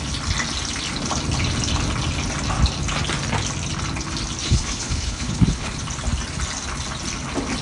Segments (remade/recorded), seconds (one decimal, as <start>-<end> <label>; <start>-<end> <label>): 0.0-4.4 recorded; 4.4-5.8 remade; 5.8-7.6 recorded